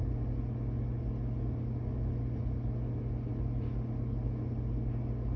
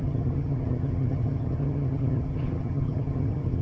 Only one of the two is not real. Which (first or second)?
second